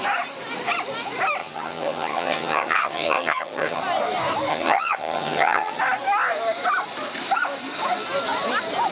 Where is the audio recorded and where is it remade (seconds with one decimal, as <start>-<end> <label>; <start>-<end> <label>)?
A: 0.0-1.4 recorded; 1.4-3.8 remade; 3.8-4.5 recorded; 4.5-5.8 remade; 5.8-8.9 recorded